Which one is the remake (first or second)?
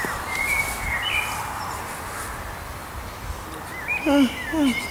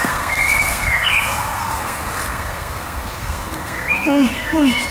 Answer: second